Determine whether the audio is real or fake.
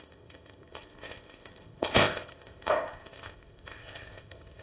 fake